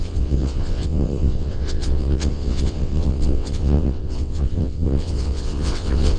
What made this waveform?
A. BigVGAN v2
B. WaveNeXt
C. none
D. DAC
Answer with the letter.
B